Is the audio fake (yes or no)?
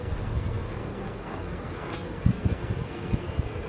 yes